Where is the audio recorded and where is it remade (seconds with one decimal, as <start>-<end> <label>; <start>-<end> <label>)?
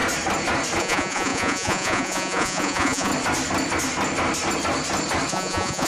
0.0-0.8 recorded; 0.8-3.1 remade; 3.1-5.3 recorded; 5.3-5.9 remade